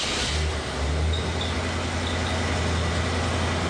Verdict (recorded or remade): recorded